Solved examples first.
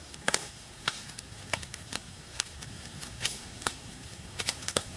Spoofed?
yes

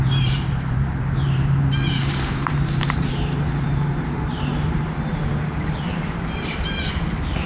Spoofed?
yes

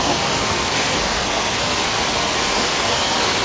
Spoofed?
yes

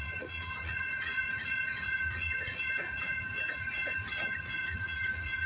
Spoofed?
yes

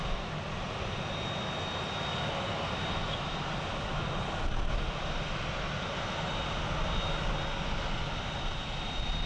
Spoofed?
no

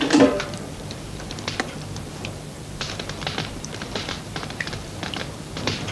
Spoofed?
yes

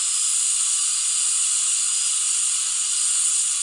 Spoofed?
no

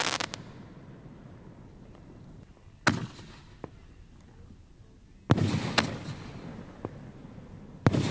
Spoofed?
no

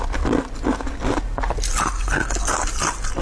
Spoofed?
no